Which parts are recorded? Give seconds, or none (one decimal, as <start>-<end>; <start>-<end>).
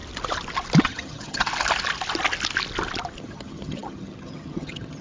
0.0-0.8; 1.5-3.2